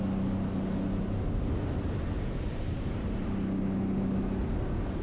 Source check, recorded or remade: recorded